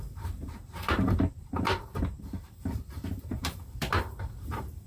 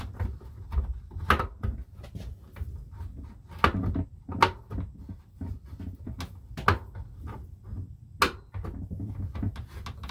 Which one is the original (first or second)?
second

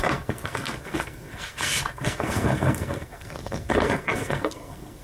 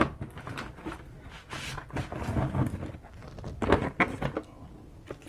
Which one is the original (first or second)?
second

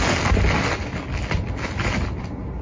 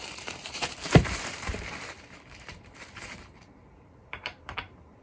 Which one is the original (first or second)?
first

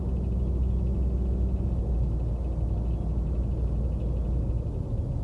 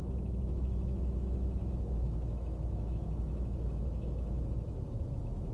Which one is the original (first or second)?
first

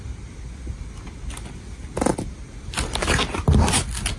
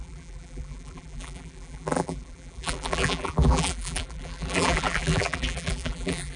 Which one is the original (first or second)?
first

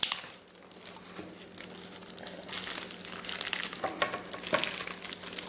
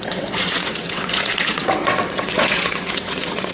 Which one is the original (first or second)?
first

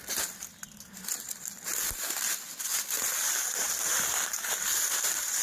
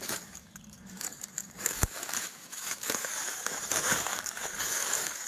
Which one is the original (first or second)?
first